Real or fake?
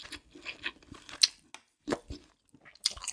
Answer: real